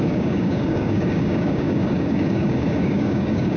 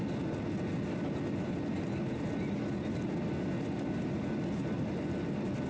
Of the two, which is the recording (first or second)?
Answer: second